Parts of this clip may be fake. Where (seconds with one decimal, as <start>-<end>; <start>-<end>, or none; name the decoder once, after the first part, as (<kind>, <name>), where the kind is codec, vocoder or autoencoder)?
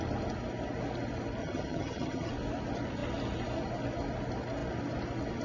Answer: 1.4-2.3 (vocoder, HiFi-GAN)